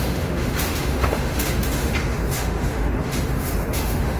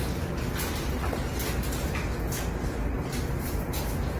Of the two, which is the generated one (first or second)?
first